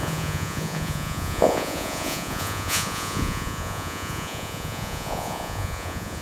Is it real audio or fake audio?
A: fake